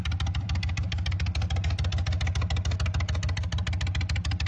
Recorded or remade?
recorded